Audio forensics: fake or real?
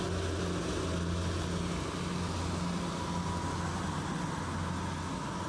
real